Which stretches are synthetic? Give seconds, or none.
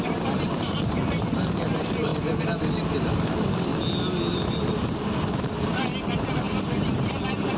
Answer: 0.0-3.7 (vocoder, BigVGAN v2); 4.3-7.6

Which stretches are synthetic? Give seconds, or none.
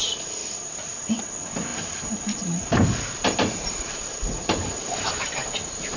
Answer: 0.4-1.2 (vocoder, BigVGAN v2); 1.7-5.1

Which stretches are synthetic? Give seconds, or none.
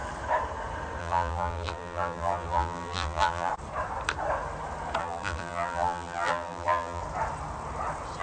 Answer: 1.0-3.5 (vocoder, BigVGAN v2); 5.0-7.0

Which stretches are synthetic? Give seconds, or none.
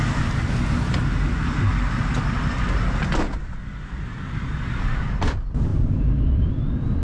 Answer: 1.7-2.5 (vocoder, BigVGAN v2); 5.7-6.5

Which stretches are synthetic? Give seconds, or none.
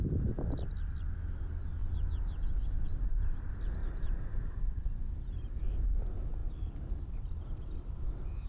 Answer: 3.8-4.9 (vocoder, BigVGAN v2)